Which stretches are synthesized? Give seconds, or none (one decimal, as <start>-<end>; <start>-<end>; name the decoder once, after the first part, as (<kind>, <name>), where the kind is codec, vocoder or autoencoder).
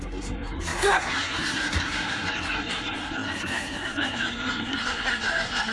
0.0-5.7 (codec, SNAC)